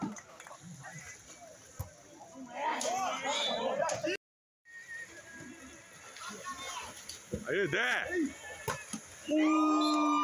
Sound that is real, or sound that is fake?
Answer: real